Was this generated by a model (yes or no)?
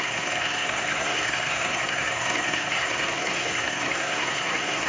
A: yes